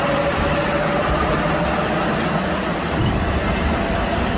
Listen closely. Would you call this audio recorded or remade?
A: recorded